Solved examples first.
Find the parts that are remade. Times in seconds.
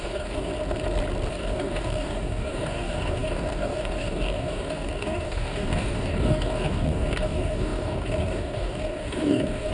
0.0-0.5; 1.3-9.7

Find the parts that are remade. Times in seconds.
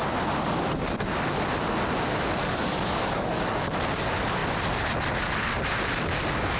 2.4-3.6